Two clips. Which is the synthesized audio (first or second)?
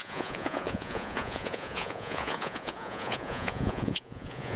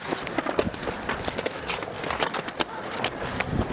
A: first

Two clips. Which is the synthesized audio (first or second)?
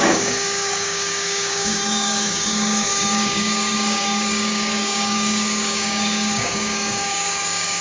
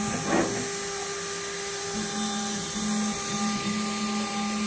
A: first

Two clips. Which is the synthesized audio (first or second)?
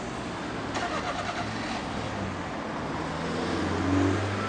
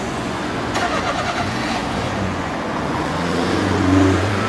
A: second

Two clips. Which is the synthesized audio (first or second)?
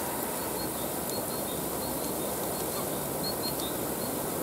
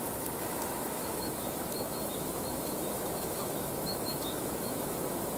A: second